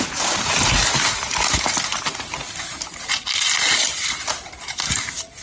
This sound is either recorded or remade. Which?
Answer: recorded